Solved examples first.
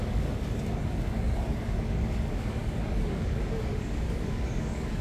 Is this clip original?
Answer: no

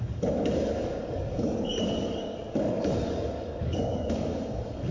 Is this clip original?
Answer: no